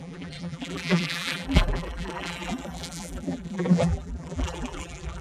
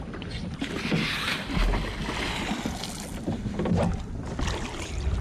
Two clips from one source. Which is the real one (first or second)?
second